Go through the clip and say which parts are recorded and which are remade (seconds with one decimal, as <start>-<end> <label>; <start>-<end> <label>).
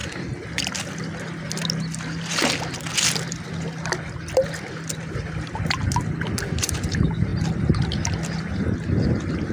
0.0-5.0 recorded; 5.0-5.8 remade; 5.8-6.4 recorded; 6.4-7.3 remade; 7.3-8.4 recorded; 8.4-9.5 remade